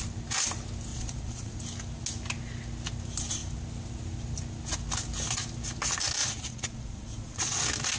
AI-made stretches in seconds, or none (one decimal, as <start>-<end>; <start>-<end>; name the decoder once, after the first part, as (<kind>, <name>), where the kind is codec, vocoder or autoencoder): 0.9-1.6 (vocoder, Vocos); 6.2-7.6